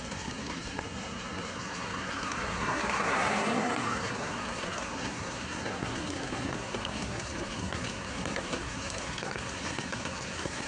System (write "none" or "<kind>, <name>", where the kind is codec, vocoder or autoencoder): codec, SNAC